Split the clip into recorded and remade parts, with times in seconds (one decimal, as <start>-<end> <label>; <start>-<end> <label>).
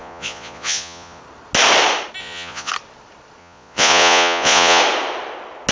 0.0-1.2 remade; 1.2-2.2 recorded; 2.2-2.7 remade; 2.7-3.4 recorded; 3.4-4.8 remade; 4.8-5.7 recorded